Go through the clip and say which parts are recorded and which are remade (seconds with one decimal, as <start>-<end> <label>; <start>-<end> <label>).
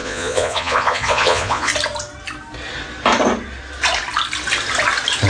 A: 0.0-1.7 remade; 1.7-5.3 recorded